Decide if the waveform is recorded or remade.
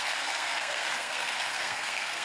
remade